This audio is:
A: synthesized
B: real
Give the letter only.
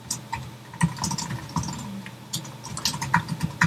B